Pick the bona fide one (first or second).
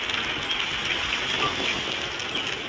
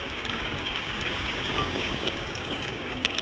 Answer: first